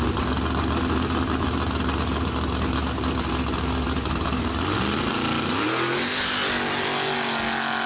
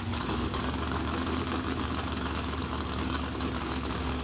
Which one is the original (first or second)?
first